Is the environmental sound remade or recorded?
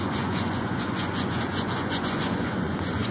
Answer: remade